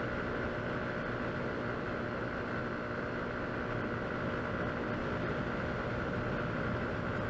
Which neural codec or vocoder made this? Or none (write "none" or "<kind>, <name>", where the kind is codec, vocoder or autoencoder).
none